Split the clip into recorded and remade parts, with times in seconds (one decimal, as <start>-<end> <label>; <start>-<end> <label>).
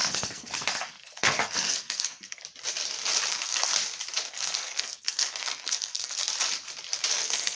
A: 0.0-2.4 remade; 2.4-3.3 recorded; 3.3-3.7 remade; 3.7-4.3 recorded; 4.3-6.2 remade; 6.2-7.1 recorded; 7.1-7.6 remade